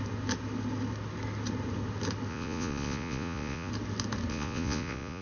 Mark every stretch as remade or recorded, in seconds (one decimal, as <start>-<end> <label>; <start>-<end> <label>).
0.0-2.3 recorded; 2.3-3.7 remade; 3.7-4.3 recorded; 4.3-5.2 remade